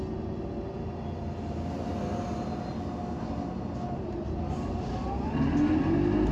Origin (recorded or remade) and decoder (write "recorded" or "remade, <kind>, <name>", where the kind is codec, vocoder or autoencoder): recorded